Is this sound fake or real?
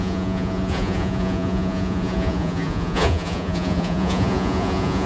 fake